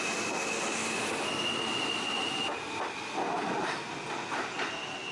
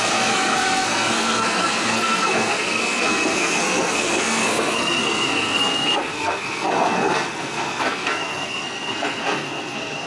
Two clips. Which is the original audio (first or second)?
first